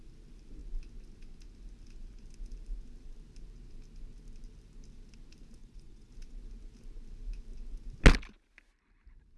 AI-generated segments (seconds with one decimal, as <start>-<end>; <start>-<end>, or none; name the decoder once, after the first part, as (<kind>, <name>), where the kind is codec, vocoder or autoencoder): 5.6-6.1 (vocoder, Vocos)